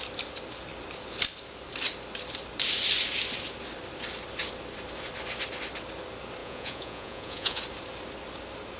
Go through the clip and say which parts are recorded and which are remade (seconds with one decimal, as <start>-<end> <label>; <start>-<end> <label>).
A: 0.0-6.4 recorded; 6.4-7.6 remade; 7.6-8.8 recorded